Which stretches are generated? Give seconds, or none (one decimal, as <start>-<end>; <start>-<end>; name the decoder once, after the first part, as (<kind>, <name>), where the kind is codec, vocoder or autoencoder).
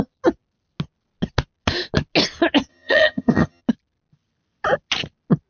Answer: 2.7-3.6 (vocoder, HiFi-GAN)